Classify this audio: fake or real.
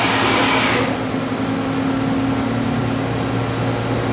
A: real